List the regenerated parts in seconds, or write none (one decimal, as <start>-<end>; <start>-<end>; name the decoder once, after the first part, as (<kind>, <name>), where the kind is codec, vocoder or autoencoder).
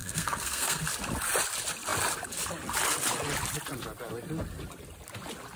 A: 0.0-0.8 (codec, SNAC)